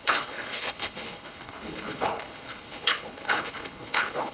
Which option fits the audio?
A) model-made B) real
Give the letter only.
A